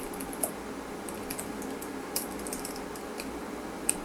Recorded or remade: recorded